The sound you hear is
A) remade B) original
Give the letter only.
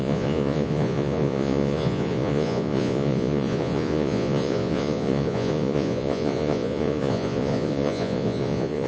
A